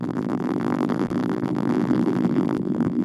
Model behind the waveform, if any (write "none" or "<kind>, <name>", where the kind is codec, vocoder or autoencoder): vocoder, BigVGAN v2